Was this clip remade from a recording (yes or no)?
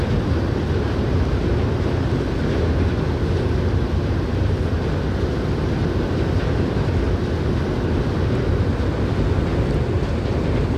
no